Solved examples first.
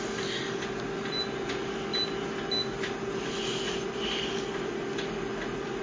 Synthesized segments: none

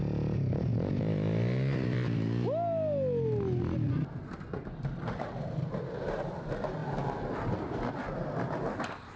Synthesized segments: none

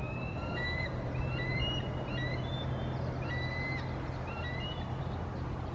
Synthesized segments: 0.0-0.9 (codec, DAC)